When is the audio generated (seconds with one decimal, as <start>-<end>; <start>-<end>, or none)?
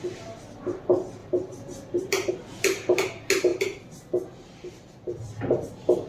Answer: 1.2-2.3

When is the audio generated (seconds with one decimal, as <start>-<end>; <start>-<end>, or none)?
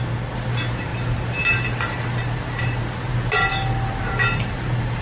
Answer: 0.9-3.1; 3.5-4.5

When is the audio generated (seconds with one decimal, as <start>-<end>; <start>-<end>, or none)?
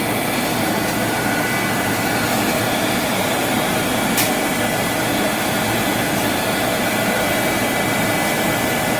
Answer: 3.0-4.2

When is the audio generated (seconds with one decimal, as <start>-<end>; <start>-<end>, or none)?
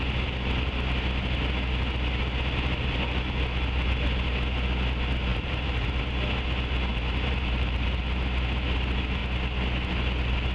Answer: 5.3-6.0; 6.9-8.0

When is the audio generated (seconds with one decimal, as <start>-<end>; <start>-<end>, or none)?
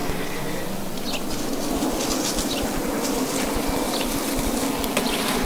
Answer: 1.7-5.5